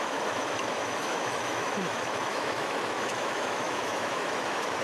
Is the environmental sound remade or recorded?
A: remade